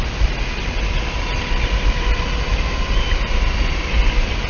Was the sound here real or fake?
real